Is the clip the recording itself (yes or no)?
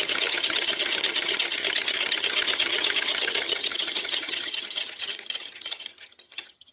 no